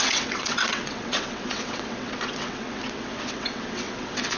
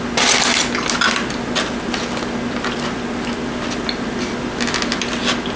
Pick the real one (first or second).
second